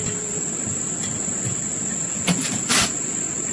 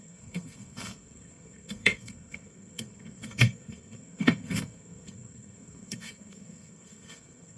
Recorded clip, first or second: first